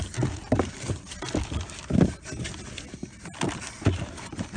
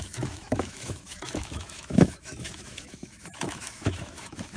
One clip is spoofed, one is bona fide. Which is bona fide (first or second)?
first